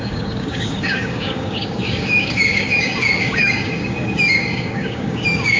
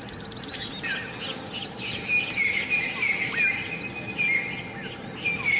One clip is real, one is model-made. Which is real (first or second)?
second